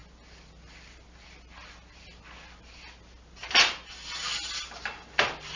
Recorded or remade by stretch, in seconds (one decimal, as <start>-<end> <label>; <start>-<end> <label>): 0.0-5.6 recorded